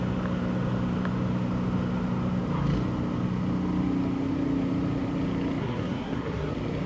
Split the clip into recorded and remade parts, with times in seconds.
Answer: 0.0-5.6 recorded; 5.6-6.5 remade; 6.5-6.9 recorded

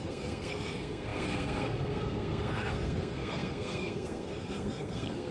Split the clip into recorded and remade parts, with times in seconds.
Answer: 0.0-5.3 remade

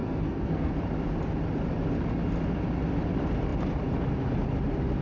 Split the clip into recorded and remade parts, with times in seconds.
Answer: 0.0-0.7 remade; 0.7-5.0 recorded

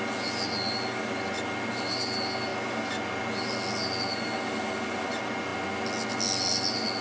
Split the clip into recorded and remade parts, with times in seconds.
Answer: 0.0-7.0 recorded

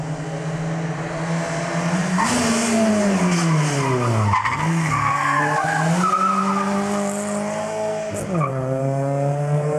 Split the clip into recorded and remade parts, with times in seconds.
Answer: 0.0-4.4 recorded; 4.4-5.4 remade; 5.4-7.6 recorded; 7.6-8.1 remade; 8.1-8.5 recorded; 8.5-9.8 remade

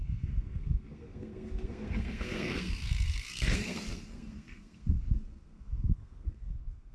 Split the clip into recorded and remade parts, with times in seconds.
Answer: 0.0-6.9 remade